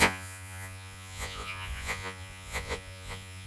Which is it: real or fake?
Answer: fake